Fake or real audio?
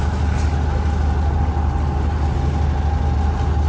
real